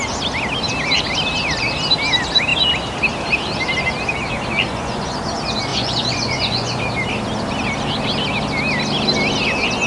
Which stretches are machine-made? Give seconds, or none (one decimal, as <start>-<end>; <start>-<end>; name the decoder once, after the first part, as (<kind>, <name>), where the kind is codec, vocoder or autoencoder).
4.7-5.2 (vocoder, Vocos); 5.7-6.8